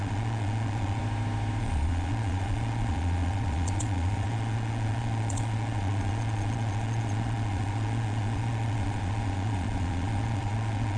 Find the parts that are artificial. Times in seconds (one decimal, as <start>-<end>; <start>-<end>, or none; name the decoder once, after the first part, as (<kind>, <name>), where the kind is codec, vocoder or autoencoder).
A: 0.0-1.0 (vocoder, Vocos); 1.6-11.0